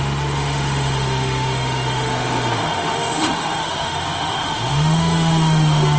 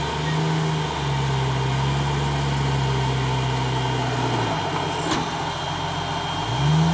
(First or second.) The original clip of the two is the second